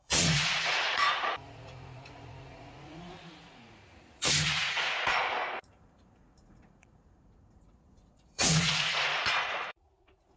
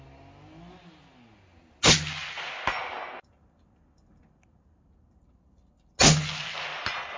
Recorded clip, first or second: second